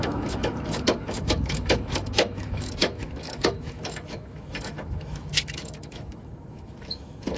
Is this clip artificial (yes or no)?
yes